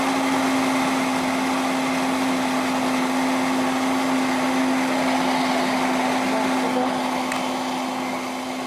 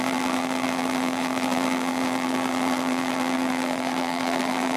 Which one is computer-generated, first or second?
second